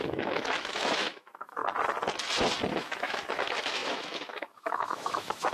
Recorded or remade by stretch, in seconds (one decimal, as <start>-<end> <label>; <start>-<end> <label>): 0.0-1.6 remade; 1.6-2.7 recorded; 2.7-5.5 remade